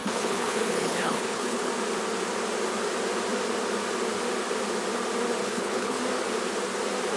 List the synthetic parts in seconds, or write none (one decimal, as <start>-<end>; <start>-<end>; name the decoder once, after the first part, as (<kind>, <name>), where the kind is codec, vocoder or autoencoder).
0.0-1.7 (codec, HILCodec); 5.4-6.0